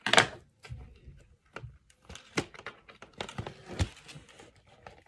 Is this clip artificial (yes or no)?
no